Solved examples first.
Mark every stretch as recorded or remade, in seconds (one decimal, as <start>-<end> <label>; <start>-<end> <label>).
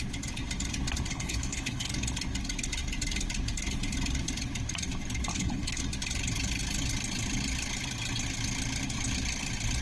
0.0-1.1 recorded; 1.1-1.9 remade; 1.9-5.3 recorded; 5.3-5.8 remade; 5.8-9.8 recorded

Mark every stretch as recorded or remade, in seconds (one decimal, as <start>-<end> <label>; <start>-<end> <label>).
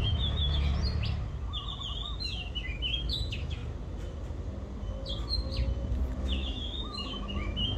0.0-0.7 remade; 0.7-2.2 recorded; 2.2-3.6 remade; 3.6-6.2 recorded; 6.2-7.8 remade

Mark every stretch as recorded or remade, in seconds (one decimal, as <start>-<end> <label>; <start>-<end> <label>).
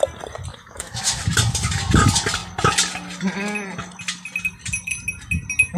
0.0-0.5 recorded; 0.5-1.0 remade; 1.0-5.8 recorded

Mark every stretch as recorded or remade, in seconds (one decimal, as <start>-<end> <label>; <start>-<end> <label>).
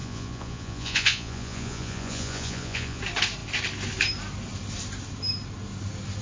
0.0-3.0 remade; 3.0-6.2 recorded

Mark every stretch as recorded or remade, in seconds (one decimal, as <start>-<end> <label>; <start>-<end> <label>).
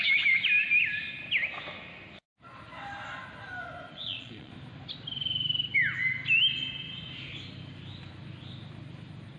0.0-3.9 recorded; 3.9-4.5 remade; 4.5-9.4 recorded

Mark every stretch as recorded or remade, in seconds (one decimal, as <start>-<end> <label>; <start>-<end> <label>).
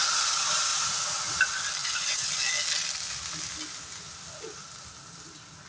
0.0-0.7 recorded; 0.7-1.4 remade; 1.4-1.8 recorded; 1.8-2.3 remade; 2.3-5.7 recorded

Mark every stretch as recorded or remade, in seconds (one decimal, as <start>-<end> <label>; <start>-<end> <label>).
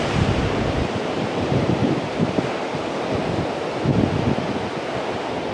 0.0-1.8 remade; 1.8-5.1 recorded; 5.1-5.5 remade